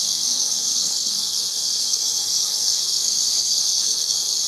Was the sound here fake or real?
fake